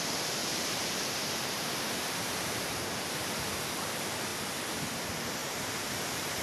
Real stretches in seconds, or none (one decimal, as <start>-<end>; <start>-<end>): 0.0-0.4; 2.8-5.4